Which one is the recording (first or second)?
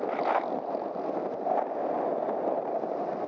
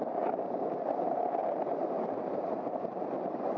first